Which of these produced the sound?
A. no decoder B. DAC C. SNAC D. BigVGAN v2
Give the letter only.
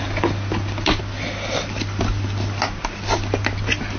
A